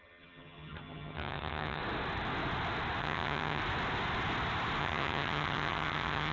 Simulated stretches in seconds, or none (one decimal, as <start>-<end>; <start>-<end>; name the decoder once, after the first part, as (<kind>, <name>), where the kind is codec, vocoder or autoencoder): 0.0-1.8 (vocoder, HiFi-GAN); 3.0-3.6; 4.8-6.3